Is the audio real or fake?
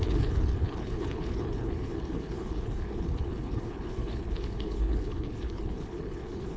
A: fake